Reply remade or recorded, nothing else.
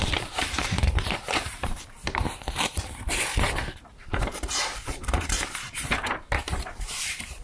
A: remade